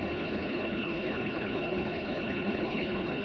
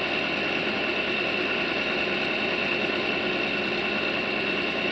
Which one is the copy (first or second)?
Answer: first